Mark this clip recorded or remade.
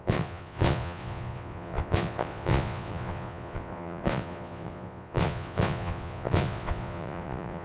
remade